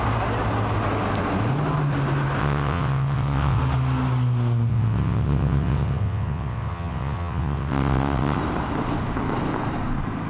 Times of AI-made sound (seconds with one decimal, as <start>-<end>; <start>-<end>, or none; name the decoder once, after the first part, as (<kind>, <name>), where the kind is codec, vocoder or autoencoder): 2.4-3.6 (vocoder, WaveNeXt); 4.7-8.4